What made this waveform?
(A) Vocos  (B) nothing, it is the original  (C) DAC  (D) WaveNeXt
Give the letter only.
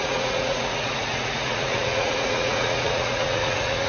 A